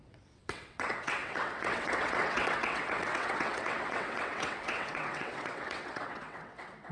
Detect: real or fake fake